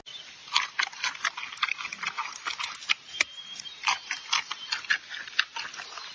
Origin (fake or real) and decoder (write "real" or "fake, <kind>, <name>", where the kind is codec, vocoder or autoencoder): real